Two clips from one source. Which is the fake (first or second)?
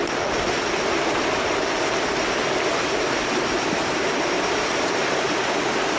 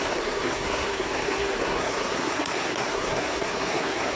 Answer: second